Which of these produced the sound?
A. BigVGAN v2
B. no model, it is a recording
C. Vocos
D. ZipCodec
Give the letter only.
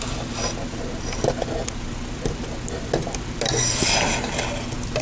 B